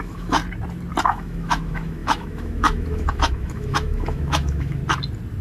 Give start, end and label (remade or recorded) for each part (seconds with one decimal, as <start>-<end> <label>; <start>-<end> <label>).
0.0-0.4 remade; 0.4-1.0 recorded; 1.0-4.8 remade; 4.8-5.4 recorded